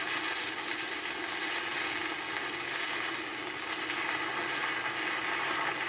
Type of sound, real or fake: real